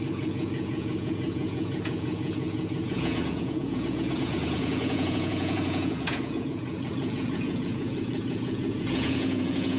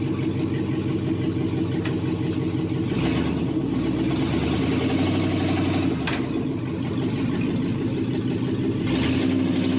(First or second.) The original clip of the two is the second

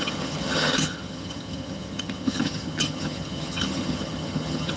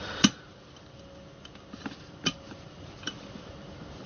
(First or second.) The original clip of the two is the second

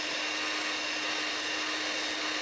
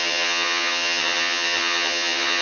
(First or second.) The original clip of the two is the first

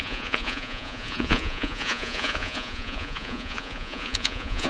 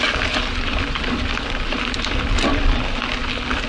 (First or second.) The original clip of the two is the second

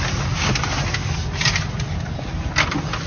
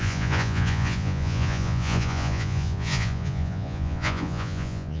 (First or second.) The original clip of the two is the first